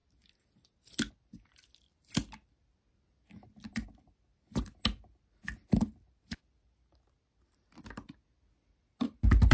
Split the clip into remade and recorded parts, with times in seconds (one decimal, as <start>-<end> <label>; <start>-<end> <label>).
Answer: 0.0-9.5 recorded